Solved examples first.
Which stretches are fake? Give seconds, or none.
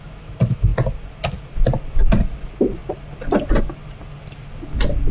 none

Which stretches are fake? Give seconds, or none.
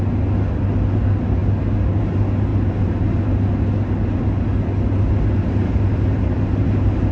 none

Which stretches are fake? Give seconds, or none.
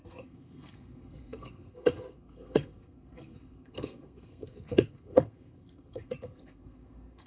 0.0-7.3 (codec, SNAC)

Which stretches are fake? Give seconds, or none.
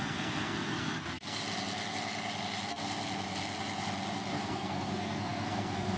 0.0-1.4 (codec, SNAC); 4.3-6.0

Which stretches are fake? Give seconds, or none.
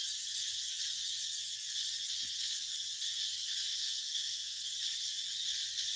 3.7-4.7 (codec, SNAC)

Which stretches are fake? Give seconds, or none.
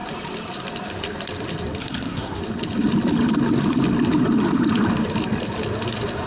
1.8-2.4 (codec, SNAC)